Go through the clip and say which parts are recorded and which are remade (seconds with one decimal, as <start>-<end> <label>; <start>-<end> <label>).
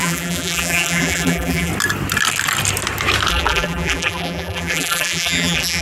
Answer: 0.0-1.7 remade; 1.7-3.3 recorded; 3.3-5.8 remade